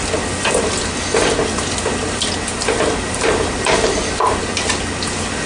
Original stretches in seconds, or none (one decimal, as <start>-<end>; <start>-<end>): 0.0-2.5; 3.9-5.5